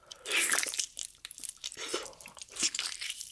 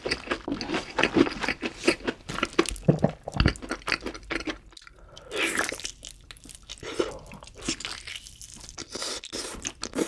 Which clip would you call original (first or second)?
second